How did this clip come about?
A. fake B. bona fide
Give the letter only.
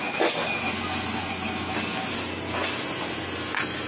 B